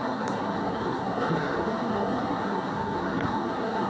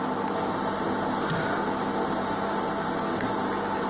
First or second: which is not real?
first